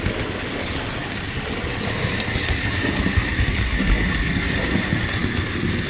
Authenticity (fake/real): real